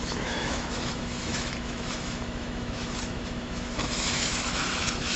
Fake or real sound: fake